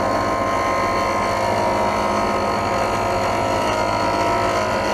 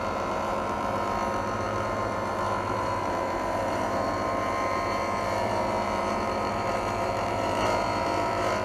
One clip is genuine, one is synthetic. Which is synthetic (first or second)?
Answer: second